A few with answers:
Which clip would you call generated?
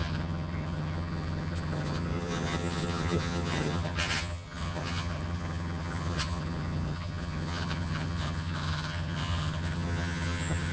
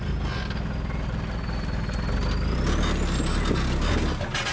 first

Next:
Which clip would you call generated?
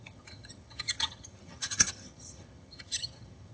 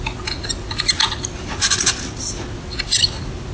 first